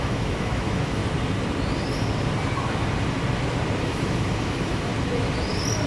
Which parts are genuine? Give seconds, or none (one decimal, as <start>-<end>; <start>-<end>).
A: 1.0-3.8; 4.9-5.9